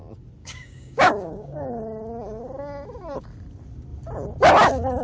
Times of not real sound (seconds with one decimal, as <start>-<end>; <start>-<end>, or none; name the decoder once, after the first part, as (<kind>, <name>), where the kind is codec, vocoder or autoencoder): 0.4-1.7 (codec, DAC)